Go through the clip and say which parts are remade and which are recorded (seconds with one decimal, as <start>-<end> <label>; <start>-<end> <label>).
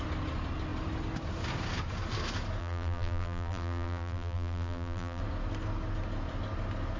0.0-2.6 recorded; 2.6-5.2 remade; 5.2-7.0 recorded